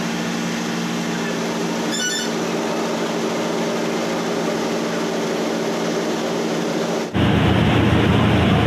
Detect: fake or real real